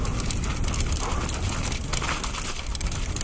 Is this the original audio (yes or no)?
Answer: yes